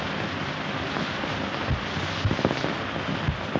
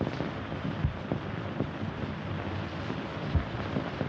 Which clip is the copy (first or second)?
second